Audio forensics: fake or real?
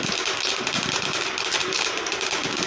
fake